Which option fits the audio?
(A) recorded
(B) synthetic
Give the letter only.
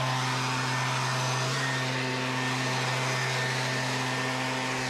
A